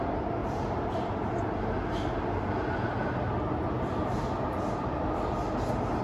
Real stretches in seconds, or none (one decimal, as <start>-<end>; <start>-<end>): 0.0-0.4; 0.9-6.0